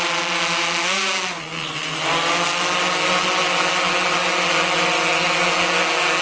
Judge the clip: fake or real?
real